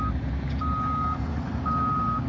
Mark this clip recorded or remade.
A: recorded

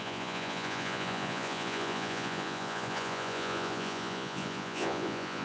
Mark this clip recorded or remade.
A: remade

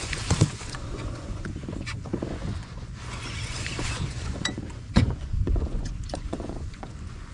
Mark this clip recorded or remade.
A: remade